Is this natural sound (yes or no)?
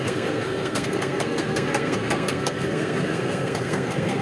no